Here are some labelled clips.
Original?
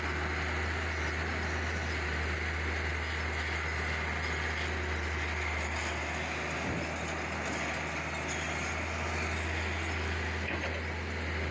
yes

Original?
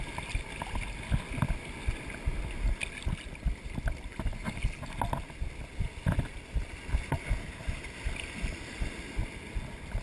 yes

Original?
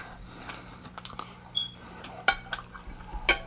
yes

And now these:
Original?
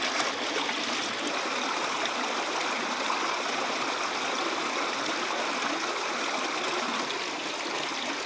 yes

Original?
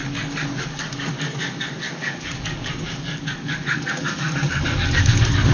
no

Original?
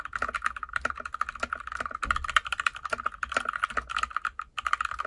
yes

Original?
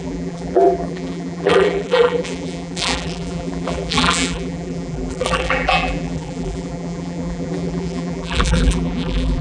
no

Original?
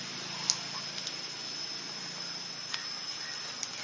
yes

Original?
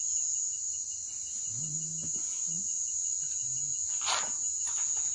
yes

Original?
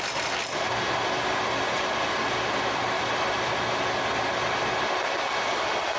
yes